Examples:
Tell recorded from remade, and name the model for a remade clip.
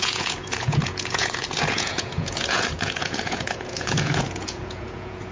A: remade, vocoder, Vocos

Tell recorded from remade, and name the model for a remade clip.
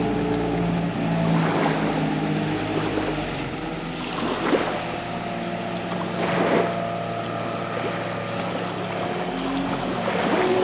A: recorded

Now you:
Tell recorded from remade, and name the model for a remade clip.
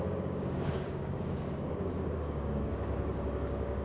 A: remade, codec, DAC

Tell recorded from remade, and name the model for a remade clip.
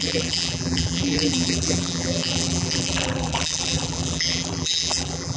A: remade, vocoder, BigVGAN v2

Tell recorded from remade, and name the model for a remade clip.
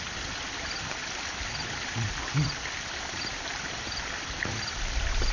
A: recorded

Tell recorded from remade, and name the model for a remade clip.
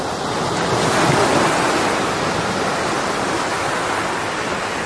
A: recorded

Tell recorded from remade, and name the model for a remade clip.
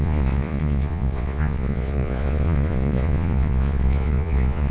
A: remade, vocoder, Vocos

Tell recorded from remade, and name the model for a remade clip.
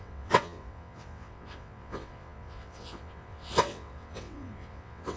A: remade, vocoder, WaveNeXt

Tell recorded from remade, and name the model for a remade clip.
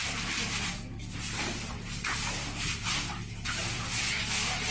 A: recorded